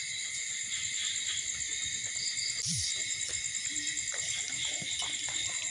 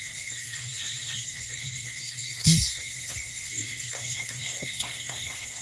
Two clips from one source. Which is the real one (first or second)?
first